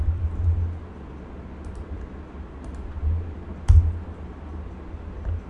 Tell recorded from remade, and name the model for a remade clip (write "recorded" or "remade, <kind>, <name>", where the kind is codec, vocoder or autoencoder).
recorded